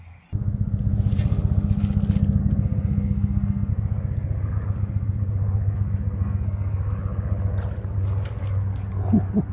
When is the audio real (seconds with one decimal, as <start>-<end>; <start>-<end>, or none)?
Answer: 0.0-2.4; 3.7-6.2; 6.9-9.5